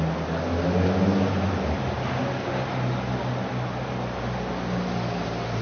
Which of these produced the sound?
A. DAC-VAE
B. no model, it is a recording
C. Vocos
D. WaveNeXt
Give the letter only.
B